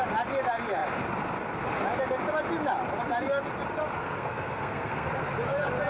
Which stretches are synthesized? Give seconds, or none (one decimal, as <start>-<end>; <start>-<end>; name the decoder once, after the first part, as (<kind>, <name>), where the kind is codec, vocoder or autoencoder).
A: 4.0-5.1 (codec, SNAC)